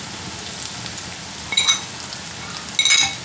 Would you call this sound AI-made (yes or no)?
no